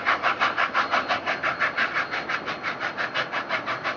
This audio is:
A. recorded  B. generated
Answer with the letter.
B